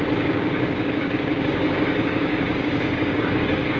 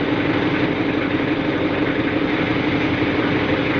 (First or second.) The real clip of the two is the second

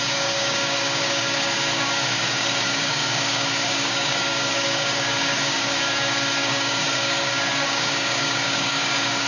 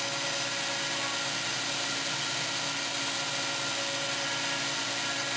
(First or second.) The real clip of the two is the second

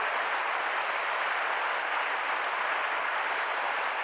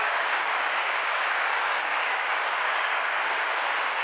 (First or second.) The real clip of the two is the first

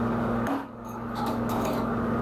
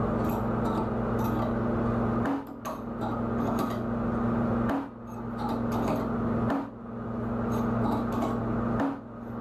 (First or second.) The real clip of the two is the second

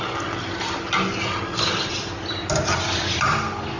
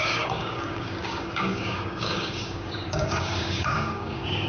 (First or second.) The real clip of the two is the first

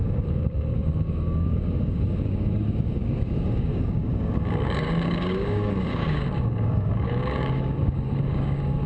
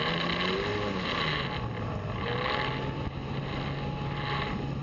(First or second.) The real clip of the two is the second